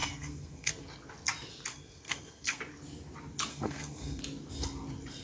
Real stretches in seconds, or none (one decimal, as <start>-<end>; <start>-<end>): 0.7-1.7; 2.6-3.5; 4.2-5.2